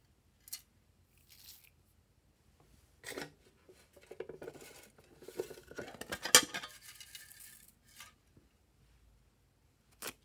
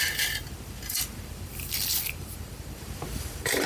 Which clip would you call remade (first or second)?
second